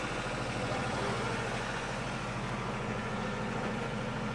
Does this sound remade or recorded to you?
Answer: remade